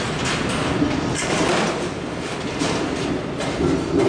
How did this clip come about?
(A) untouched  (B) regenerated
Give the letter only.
A